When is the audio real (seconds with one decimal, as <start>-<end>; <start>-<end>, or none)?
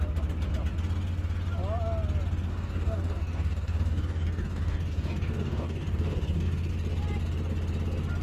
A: 0.0-2.5; 6.7-8.2